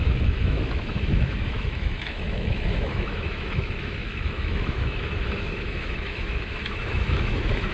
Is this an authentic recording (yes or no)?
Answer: no